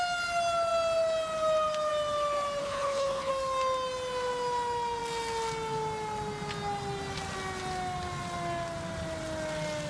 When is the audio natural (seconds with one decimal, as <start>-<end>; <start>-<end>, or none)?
0.0-2.6; 3.3-9.9